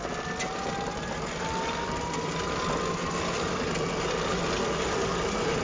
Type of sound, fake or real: real